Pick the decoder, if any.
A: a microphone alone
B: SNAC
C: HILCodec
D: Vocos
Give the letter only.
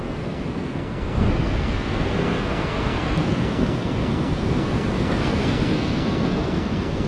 B